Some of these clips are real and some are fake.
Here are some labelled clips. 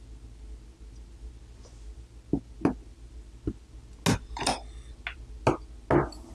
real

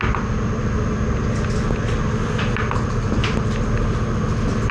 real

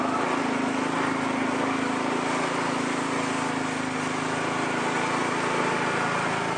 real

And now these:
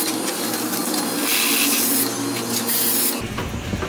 real